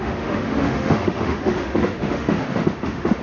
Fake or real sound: fake